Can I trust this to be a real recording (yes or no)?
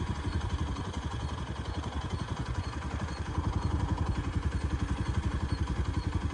no